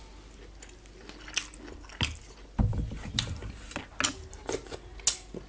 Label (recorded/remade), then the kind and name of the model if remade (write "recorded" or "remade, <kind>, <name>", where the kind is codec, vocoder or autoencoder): recorded